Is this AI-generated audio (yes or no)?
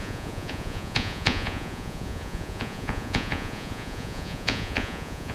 yes